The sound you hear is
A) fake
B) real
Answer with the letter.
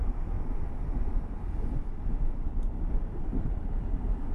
B